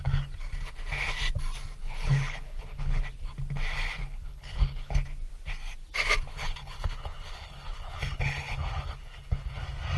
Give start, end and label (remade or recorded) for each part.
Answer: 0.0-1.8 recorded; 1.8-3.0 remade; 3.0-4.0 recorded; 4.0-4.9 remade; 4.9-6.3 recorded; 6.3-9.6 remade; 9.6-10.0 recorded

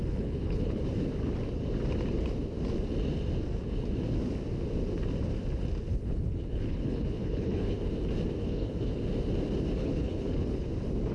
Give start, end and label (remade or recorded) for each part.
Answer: 0.0-0.8 remade; 0.8-5.9 recorded; 5.9-7.9 remade; 7.9-8.4 recorded; 8.4-9.0 remade; 9.0-9.8 recorded; 9.8-10.7 remade; 10.7-11.1 recorded

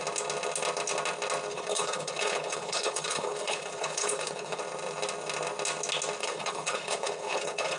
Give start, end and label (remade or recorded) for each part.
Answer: 0.0-1.5 recorded; 1.5-4.6 remade; 4.6-6.2 recorded; 6.2-7.8 remade

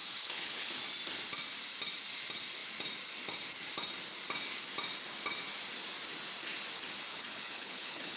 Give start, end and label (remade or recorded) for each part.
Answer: 0.0-0.7 remade; 0.7-7.1 recorded; 7.1-8.2 remade